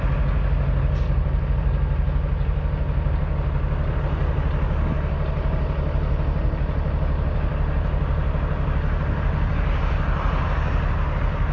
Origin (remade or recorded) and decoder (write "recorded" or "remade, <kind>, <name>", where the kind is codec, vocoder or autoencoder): recorded